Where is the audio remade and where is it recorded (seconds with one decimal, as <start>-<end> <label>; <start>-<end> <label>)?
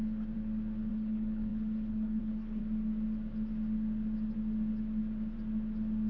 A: 0.0-0.9 recorded; 0.9-2.6 remade; 2.6-6.1 recorded